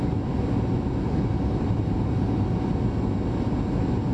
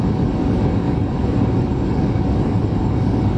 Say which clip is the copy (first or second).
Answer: second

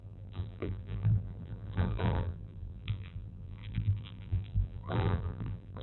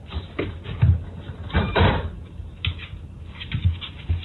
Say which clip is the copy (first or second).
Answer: first